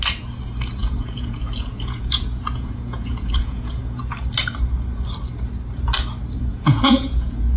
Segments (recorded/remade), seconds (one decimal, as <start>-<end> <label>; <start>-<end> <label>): 0.0-0.8 recorded; 0.8-4.0 remade; 4.0-6.4 recorded; 6.4-7.6 remade